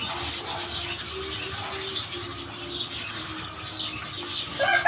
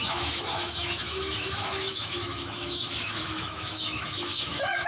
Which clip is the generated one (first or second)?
second